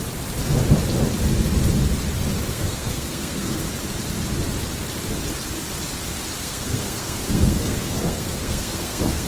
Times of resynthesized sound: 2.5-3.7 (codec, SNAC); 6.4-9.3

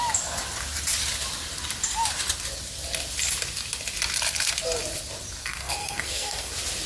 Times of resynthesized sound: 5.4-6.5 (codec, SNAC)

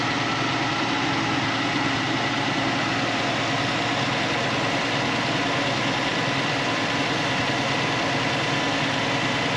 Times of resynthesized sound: 6.1-7.4 (vocoder, BigVGAN v2)

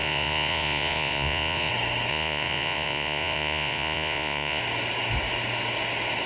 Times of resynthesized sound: 0.0-1.7 (vocoder, Vocos); 2.1-4.6

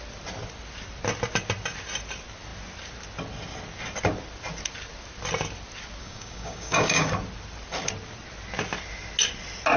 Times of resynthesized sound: 6.0-7.1 (codec, DAC)

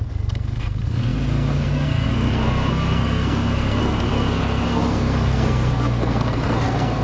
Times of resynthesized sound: 0.0-7.0 (codec, SNAC)

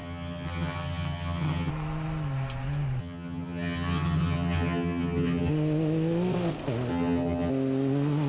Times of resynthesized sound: 0.0-1.7 (vocoder, HiFi-GAN); 3.0-5.5; 6.9-7.5

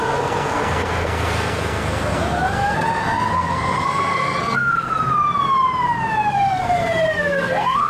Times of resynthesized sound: 0.0-4.9 (codec, SNAC); 6.3-7.9